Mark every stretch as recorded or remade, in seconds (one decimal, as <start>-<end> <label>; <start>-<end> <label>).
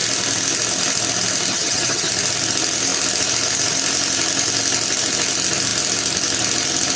0.0-1.5 recorded; 1.5-2.1 remade; 2.1-7.0 recorded